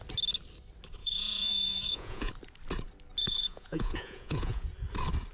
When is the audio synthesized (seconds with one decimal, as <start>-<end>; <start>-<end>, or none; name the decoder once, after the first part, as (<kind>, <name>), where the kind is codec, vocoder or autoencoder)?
1.0-2.3 (vocoder, Vocos); 3.2-4.7